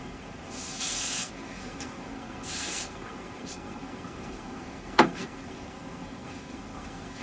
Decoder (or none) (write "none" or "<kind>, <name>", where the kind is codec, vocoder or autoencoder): codec, SNAC